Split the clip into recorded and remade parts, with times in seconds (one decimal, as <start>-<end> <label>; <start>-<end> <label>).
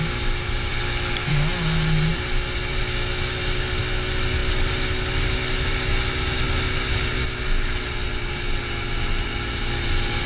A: 0.0-2.1 recorded; 2.1-2.8 remade; 2.8-10.3 recorded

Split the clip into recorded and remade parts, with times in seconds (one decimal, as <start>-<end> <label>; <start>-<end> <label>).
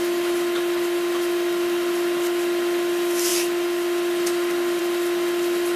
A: 0.0-5.8 recorded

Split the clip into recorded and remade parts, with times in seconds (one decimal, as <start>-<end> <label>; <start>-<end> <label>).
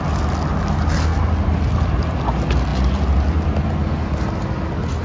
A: 0.0-5.0 recorded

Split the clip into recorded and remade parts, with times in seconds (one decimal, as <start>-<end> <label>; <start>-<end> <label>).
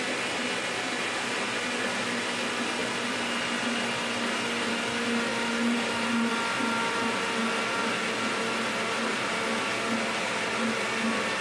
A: 0.0-5.3 recorded; 5.3-6.3 remade; 6.3-11.4 recorded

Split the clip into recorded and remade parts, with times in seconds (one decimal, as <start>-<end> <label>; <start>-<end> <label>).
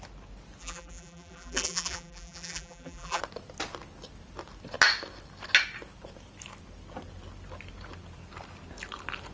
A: 0.0-0.6 recorded; 0.6-3.2 remade; 3.2-9.3 recorded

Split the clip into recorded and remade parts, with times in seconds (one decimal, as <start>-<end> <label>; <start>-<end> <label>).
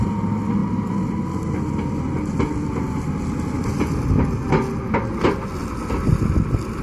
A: 0.0-6.8 recorded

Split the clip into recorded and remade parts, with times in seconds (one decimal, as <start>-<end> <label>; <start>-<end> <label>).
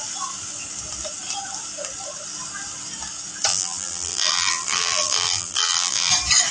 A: 0.0-3.5 recorded; 3.5-6.1 remade; 6.1-6.5 recorded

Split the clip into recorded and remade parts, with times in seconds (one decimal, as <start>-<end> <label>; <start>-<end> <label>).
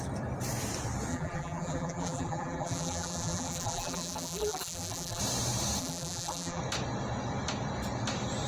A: 0.0-1.1 recorded; 1.1-5.2 remade; 5.2-5.8 recorded; 5.8-6.6 remade; 6.6-8.5 recorded